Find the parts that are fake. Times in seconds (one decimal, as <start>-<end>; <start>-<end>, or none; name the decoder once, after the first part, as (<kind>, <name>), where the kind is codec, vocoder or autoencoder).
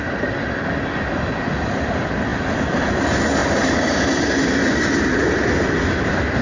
3.4-4.4 (vocoder, BigVGAN v2)